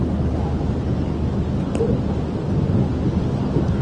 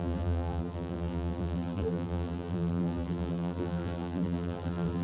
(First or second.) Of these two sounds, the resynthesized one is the second